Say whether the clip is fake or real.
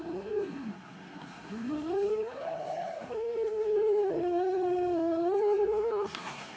fake